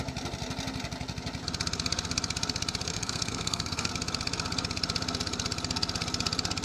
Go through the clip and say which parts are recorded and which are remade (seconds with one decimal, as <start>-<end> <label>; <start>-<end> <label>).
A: 0.0-2.9 recorded; 2.9-3.9 remade; 3.9-6.6 recorded